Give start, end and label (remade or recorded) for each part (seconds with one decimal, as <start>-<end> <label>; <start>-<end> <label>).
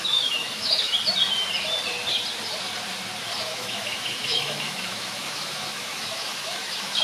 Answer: 0.0-0.9 remade; 0.9-3.4 recorded; 3.4-7.0 remade